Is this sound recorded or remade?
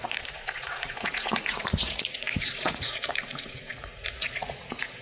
remade